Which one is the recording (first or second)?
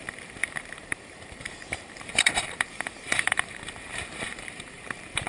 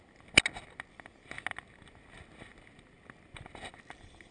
second